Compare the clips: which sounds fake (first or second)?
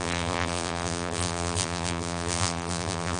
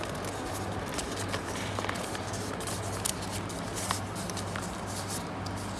first